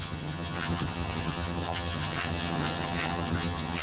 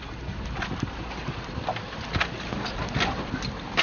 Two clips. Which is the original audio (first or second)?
second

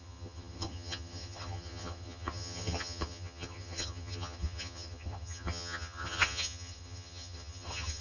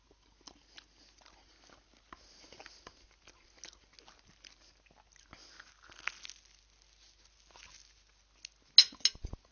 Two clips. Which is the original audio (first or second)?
second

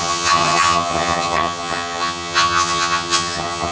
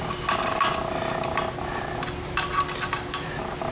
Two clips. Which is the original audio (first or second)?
second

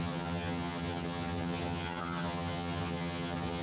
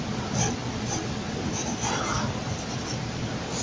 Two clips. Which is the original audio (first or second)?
second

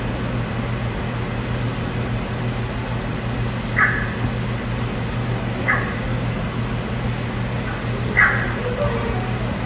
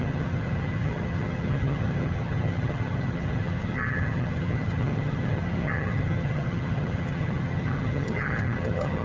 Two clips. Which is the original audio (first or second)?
first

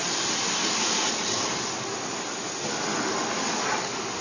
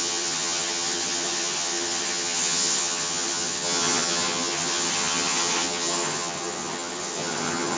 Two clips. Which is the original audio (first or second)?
first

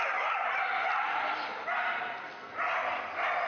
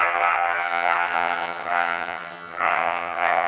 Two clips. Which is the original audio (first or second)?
first